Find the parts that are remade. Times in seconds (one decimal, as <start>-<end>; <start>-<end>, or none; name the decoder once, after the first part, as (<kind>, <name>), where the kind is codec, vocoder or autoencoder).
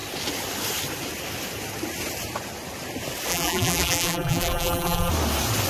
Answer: 3.3-5.1 (vocoder, BigVGAN v2)